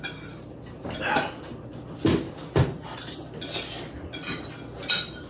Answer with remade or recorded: recorded